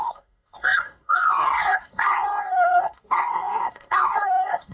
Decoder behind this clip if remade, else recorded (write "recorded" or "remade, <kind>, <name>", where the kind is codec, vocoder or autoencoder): remade, codec, SNAC